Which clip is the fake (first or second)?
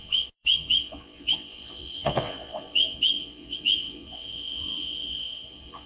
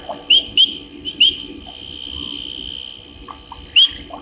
first